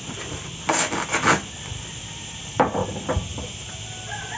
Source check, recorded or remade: recorded